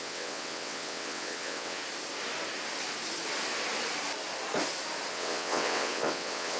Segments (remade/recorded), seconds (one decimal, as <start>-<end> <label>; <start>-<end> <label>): 0.0-1.8 remade; 1.8-5.1 recorded; 5.1-6.6 remade